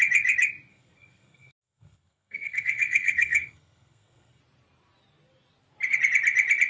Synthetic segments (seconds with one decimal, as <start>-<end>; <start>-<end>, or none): 0.7-4.4